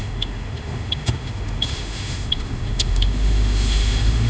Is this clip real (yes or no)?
no